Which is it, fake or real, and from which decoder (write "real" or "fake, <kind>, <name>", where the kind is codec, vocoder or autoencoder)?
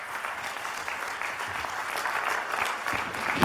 real